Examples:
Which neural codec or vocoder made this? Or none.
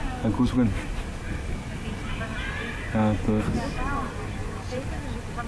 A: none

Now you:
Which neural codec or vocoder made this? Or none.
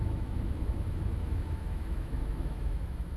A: autoencoder, DAC-VAE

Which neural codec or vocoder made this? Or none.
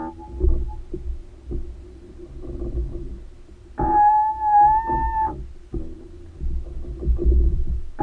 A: none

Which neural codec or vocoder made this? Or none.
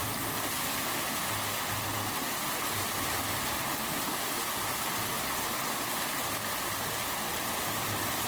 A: none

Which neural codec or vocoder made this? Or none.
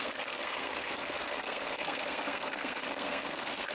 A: codec, SNAC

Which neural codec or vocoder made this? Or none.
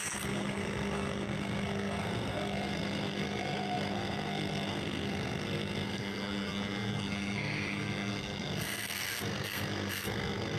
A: codec, SNAC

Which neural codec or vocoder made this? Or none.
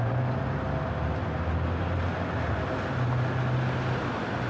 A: none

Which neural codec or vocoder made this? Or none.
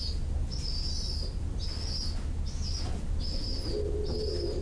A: none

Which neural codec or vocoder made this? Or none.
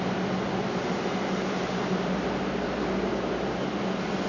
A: none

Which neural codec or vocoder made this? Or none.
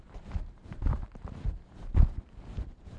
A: vocoder, BigVGAN v2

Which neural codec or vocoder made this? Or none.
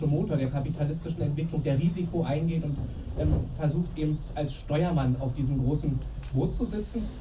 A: none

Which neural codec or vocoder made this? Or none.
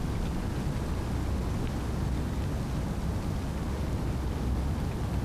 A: none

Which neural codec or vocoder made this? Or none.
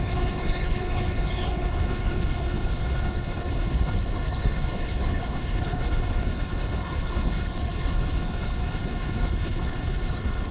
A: codec, HILCodec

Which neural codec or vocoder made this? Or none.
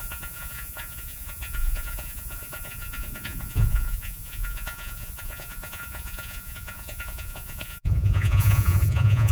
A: vocoder, Vocos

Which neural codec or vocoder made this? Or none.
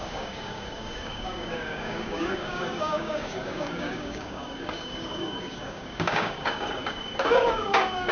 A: codec, DAC